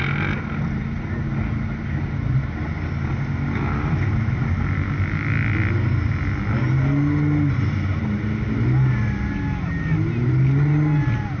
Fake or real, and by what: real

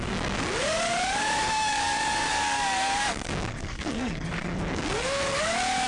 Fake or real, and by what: fake, codec, DAC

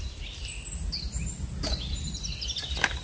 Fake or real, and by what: real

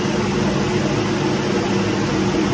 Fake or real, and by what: real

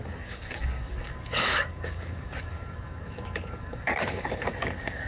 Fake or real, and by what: fake, codec, DAC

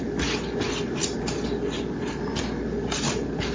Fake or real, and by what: real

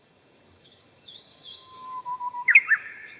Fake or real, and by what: fake, codec, DAC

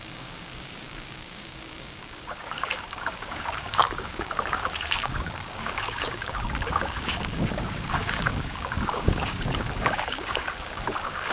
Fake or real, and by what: fake, codec, DAC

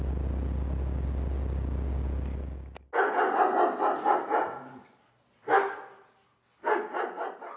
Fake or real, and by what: real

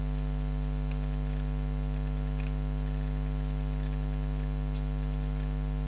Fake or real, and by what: real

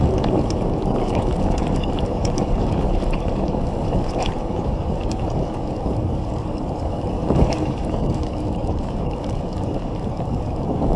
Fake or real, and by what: fake, codec, DAC